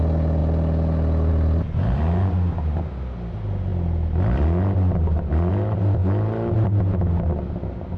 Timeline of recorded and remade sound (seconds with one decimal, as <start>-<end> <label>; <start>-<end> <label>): 0.0-8.0 recorded